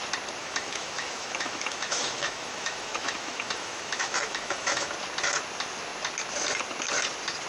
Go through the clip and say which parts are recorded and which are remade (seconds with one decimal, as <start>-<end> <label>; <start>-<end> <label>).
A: 0.0-0.4 recorded; 0.4-4.9 remade; 4.9-7.5 recorded